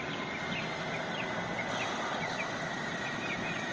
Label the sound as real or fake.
real